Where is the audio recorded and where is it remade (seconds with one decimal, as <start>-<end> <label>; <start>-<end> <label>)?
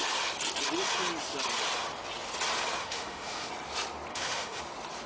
0.0-2.8 recorded; 2.8-3.5 remade; 3.5-4.1 recorded; 4.1-4.6 remade; 4.6-5.1 recorded